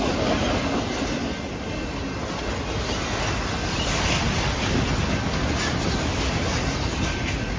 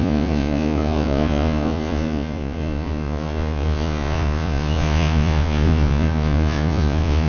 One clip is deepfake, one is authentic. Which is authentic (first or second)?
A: first